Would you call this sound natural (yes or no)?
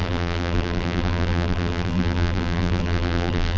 no